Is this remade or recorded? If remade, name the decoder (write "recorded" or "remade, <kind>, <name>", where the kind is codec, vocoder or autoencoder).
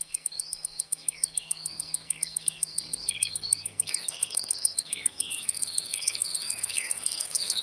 remade, codec, SNAC